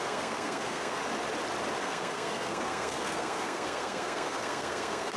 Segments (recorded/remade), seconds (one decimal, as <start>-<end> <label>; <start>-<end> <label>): 0.0-1.0 remade; 1.0-1.8 recorded; 1.8-5.2 remade